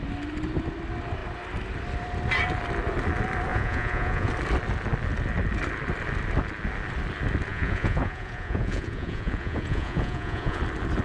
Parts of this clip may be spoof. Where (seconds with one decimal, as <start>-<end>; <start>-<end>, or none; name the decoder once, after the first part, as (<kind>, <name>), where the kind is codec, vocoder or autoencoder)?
3.5-4.3 (vocoder, Vocos); 7.5-10.6